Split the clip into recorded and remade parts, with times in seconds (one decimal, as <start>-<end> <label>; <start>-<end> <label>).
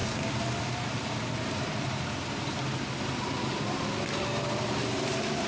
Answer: 0.0-5.5 recorded